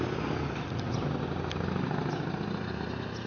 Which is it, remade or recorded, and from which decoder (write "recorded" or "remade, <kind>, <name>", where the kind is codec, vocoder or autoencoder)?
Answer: recorded